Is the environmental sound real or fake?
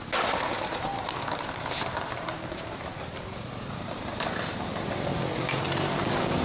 fake